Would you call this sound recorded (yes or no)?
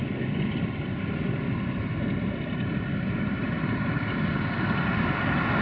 yes